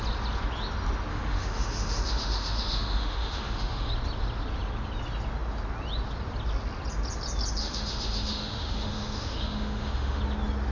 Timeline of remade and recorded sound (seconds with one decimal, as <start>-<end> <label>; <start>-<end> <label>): 0.0-1.1 recorded; 1.1-3.9 remade; 3.9-7.6 recorded; 7.6-10.2 remade; 10.2-10.7 recorded